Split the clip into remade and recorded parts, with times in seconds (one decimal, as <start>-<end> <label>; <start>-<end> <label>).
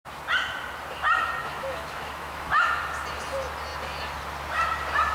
0.0-1.4 recorded; 1.4-2.8 remade; 2.8-5.1 recorded